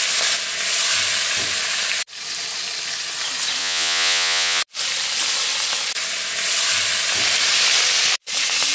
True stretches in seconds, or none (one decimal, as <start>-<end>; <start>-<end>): 0.0-3.6; 4.6-8.7